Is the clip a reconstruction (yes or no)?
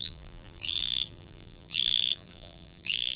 yes